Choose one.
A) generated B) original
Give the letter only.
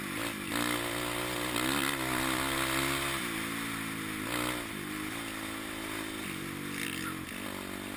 B